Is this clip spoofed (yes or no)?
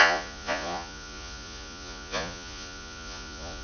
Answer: yes